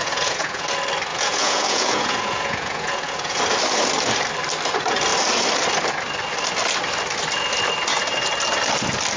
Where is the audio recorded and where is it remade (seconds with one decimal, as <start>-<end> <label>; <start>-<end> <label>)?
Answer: 0.0-0.7 remade; 0.7-1.1 recorded; 1.1-3.4 remade; 3.4-9.2 recorded